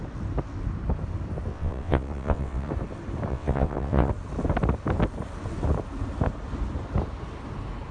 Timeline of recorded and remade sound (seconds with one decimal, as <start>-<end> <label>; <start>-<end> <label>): 0.0-1.5 recorded; 1.5-2.7 remade; 2.7-3.3 recorded; 3.3-4.1 remade; 4.1-7.9 recorded